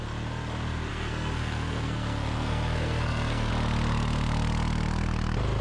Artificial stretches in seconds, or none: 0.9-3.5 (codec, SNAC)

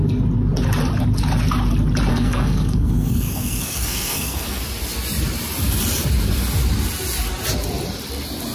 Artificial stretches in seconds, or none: 2.1-4.6 (codec, SNAC)

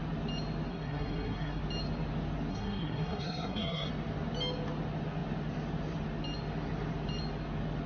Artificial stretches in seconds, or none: 0.7-1.6 (codec, SNAC); 2.5-3.9

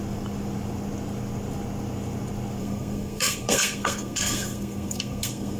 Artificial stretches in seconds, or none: 2.6-5.6 (codec, SNAC)

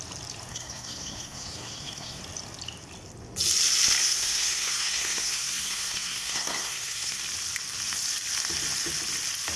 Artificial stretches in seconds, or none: 0.5-2.2 (codec, SNAC); 4.0-7.2

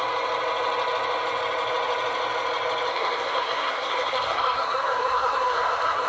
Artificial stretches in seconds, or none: 2.9-6.1 (codec, SNAC)